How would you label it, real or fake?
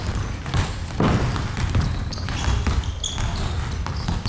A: real